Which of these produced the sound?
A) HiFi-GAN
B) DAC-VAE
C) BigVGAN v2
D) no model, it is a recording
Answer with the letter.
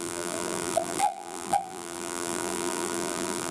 C